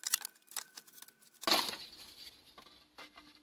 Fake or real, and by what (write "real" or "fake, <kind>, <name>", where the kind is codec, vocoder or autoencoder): real